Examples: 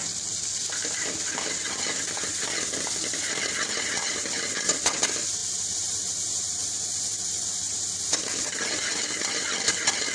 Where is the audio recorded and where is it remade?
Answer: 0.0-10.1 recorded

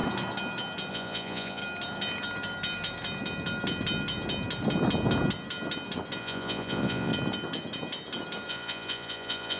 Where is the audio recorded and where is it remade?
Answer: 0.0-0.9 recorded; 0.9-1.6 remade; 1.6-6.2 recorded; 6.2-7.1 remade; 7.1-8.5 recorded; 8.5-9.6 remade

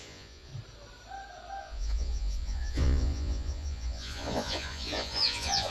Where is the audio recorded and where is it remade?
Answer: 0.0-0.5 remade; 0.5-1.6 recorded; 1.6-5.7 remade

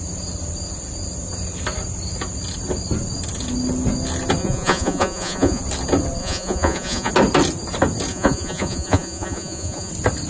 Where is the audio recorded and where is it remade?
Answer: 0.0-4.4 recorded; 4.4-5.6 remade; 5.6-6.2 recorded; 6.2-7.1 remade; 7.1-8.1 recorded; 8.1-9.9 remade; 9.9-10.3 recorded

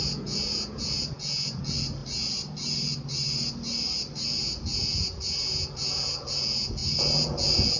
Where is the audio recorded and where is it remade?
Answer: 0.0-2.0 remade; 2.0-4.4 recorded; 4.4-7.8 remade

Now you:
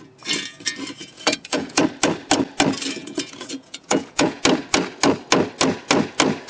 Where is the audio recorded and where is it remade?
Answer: 0.0-1.0 recorded; 1.0-1.8 remade; 1.8-3.0 recorded; 3.0-4.4 remade; 4.4-6.5 recorded